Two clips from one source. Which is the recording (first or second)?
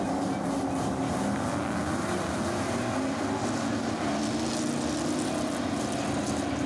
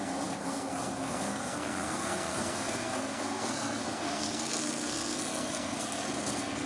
first